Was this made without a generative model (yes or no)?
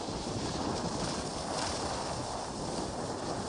yes